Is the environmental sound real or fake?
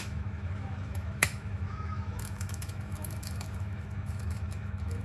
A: fake